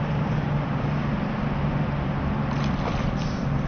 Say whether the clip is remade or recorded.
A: recorded